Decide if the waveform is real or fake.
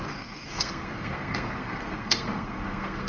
fake